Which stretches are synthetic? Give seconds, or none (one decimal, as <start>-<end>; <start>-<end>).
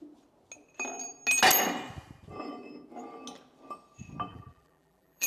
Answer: 4.3-5.3